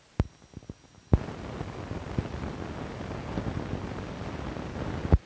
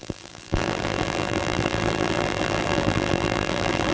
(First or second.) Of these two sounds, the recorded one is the first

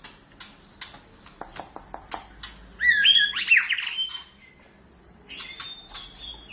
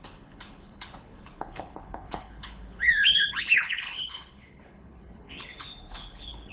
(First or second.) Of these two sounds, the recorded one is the first